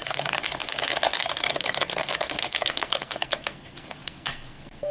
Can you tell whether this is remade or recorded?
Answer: remade